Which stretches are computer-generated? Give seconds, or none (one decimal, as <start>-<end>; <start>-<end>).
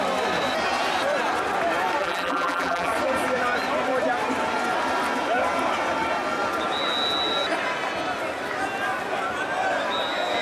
2.0-2.9